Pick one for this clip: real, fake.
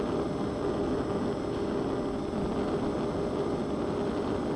real